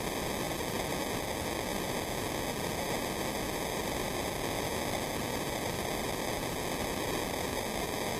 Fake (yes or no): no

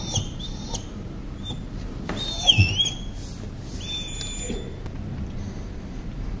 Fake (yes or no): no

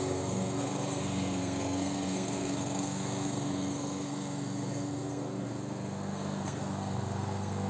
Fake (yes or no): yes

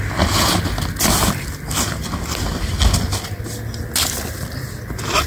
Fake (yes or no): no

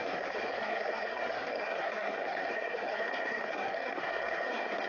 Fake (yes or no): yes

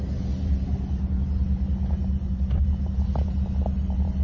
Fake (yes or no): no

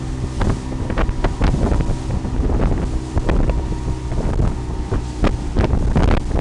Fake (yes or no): no